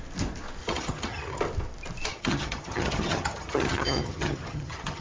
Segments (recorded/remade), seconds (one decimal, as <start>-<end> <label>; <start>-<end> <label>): 0.0-0.6 recorded; 0.6-1.4 remade; 1.4-2.1 recorded; 2.1-5.0 remade